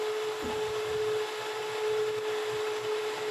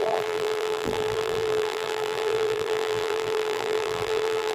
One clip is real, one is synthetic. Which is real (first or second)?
first